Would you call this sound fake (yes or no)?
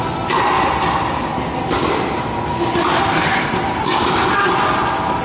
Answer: no